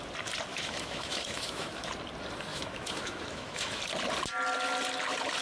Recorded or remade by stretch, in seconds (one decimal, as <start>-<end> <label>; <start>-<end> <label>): 0.0-0.5 recorded; 0.5-1.9 remade; 1.9-2.5 recorded; 2.5-3.8 remade; 3.8-5.4 recorded